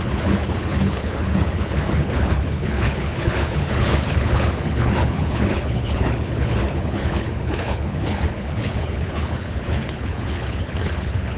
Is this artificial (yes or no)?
yes